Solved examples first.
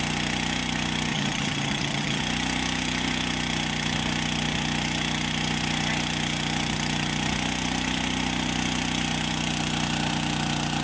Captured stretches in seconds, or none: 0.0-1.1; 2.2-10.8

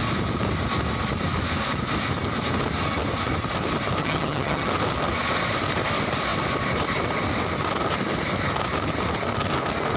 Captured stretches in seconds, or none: 0.0-4.0; 4.7-10.0